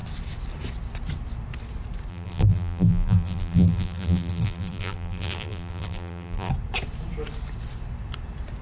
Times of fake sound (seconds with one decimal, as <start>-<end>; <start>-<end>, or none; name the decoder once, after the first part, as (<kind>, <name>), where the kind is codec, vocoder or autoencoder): 2.1-6.5 (vocoder, BigVGAN v2)